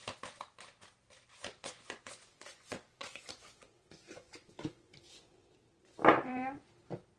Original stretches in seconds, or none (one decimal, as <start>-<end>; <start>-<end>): 0.0-1.6; 5.5-6.1; 6.7-7.2